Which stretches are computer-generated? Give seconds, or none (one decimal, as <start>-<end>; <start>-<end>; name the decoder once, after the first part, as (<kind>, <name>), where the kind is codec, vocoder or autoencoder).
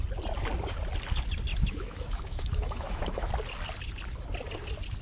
1.5-3.3 (autoencoder, DAC-VAE)